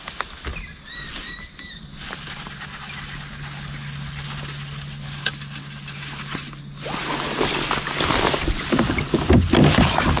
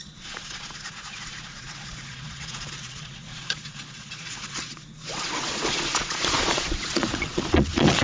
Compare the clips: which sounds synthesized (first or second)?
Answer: second